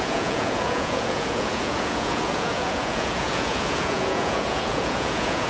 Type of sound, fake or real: fake